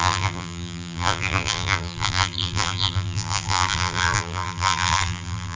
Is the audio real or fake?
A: fake